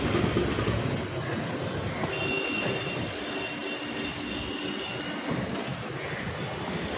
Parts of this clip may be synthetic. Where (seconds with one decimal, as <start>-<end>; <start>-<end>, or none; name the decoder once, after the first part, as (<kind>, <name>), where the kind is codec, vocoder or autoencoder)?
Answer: none

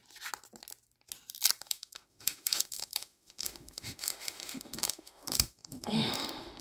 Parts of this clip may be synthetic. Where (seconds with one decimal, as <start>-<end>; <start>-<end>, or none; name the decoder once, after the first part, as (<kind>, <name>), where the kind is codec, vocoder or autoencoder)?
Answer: 1.6-6.6 (autoencoder, DAC-VAE)

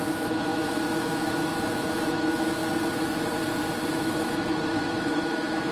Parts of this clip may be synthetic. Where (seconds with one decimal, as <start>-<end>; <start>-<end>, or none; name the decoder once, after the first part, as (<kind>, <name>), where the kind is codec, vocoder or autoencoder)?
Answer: 0.0-2.6 (autoencoder, DAC-VAE); 3.9-5.7

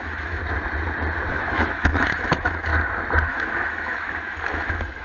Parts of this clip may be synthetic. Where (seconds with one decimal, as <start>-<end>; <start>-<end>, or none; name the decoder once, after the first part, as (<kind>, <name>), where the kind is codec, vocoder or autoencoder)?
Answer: 0.0-0.4 (autoencoder, DAC-VAE); 1.3-2.7; 3.3-5.0

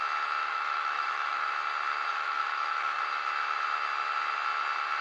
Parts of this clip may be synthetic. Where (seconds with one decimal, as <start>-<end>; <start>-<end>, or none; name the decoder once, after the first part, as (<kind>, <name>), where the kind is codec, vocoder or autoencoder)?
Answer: 0.4-1.5 (autoencoder, DAC-VAE); 2.1-3.0

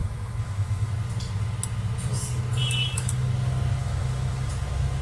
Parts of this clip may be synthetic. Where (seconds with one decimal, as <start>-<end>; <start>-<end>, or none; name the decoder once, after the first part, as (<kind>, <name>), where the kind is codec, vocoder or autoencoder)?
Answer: 0.0-0.9 (autoencoder, DAC-VAE); 2.6-3.3; 3.8-4.5

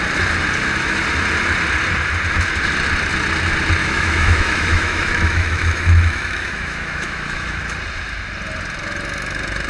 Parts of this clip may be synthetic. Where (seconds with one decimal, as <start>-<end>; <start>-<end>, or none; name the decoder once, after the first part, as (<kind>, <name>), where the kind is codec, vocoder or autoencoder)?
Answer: 3.8-7.6 (autoencoder, DAC-VAE)